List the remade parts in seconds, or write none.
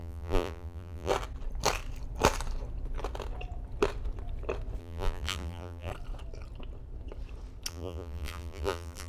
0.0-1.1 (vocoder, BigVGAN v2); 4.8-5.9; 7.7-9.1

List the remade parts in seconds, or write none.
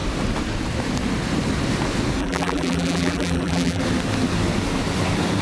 2.2-3.8 (vocoder, BigVGAN v2)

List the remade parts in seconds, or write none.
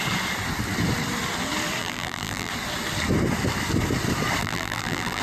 1.8-2.5 (vocoder, BigVGAN v2); 4.4-5.2